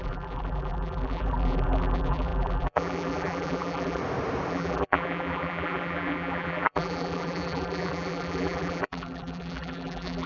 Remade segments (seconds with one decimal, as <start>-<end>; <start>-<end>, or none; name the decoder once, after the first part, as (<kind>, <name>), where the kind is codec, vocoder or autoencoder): 0.0-4.0 (vocoder, BigVGAN v2); 4.5-10.3